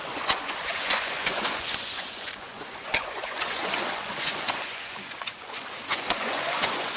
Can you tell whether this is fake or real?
fake